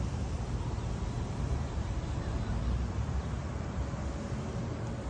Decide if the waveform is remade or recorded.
remade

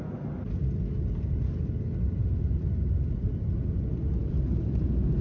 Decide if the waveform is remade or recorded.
recorded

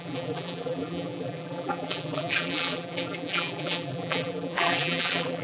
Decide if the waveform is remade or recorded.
remade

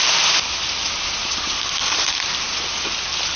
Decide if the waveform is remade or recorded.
recorded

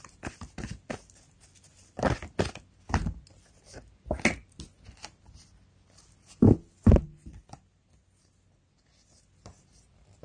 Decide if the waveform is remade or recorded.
recorded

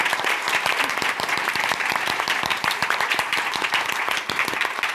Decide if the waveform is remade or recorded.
remade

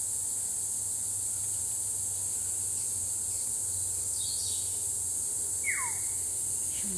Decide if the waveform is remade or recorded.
recorded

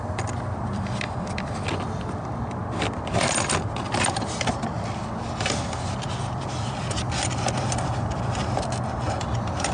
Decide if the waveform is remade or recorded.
remade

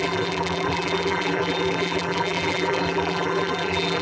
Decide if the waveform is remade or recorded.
remade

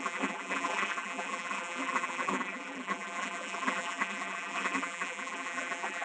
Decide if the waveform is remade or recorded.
remade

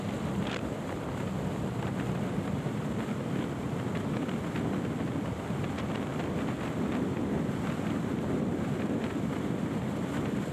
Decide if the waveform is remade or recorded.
remade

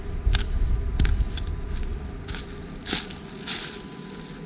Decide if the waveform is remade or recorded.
recorded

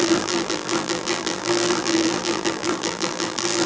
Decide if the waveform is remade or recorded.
remade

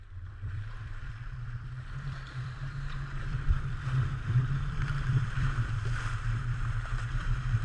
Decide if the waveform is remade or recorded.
remade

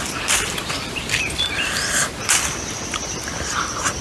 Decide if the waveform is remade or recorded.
remade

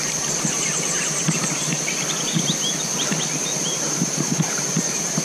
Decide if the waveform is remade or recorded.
recorded